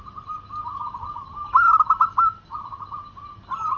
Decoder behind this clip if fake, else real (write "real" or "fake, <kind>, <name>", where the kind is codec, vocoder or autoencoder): real